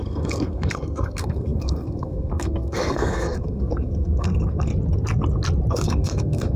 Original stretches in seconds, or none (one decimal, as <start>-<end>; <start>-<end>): 4.7-5.7